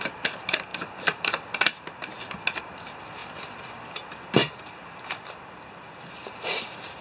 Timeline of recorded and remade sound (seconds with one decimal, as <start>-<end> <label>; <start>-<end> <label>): 0.0-7.0 recorded